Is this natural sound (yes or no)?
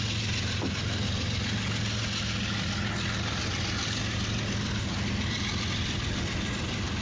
yes